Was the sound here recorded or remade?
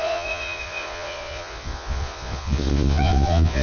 remade